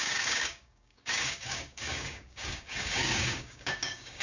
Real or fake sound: fake